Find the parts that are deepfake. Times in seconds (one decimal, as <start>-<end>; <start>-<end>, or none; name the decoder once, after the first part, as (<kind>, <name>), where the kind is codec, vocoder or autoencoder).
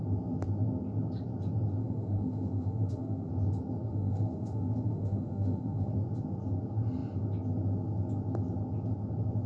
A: 1.8-3.3 (autoencoder, DAC-VAE); 3.9-5.9